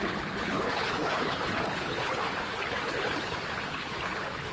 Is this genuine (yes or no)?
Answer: no